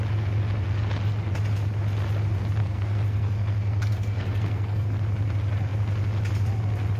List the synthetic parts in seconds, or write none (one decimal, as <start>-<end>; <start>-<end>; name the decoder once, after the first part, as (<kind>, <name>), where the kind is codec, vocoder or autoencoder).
2.6-4.9 (codec, SNAC)

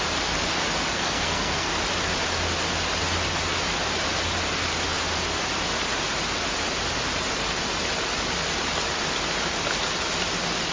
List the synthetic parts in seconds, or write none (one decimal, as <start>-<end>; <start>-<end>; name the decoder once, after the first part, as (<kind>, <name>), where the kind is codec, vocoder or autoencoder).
0.9-1.7 (codec, SNAC)

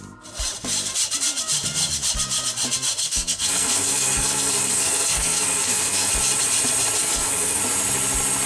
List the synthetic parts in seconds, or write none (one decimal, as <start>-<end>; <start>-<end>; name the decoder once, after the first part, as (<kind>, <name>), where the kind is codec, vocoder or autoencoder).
3.0-6.1 (codec, SNAC); 7.0-7.6

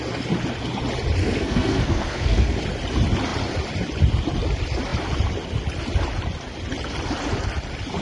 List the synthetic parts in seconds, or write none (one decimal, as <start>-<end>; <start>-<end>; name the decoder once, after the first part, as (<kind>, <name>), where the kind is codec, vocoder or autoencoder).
1.2-2.6 (codec, SNAC)

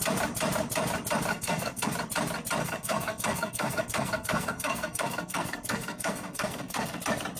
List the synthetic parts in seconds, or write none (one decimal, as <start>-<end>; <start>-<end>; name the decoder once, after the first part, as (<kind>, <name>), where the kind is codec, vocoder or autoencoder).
1.3-1.9 (codec, SNAC); 2.6-7.0

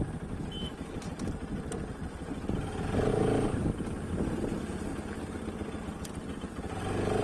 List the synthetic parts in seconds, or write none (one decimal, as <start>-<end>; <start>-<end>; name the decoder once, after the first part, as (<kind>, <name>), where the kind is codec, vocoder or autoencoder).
none

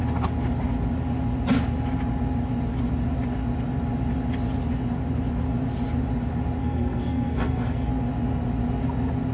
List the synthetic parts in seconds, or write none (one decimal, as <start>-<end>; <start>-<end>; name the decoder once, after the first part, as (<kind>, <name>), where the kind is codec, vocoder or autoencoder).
6.6-7.9 (codec, SNAC)

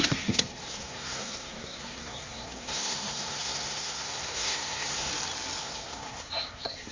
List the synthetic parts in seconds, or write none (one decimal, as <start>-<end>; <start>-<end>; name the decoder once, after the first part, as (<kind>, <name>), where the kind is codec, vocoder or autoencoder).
0.0-5.1 (codec, SNAC); 5.6-6.9